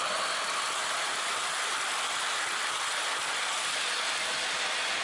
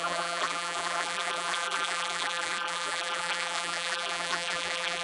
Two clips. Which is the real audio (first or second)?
first